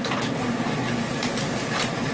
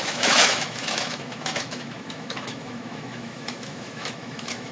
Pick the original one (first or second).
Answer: first